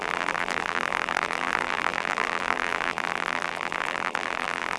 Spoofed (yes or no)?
yes